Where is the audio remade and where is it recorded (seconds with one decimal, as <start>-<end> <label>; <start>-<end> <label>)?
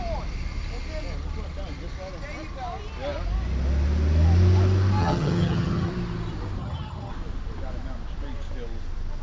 0.0-5.0 recorded; 5.0-5.9 remade; 5.9-6.6 recorded; 6.6-7.1 remade; 7.1-9.2 recorded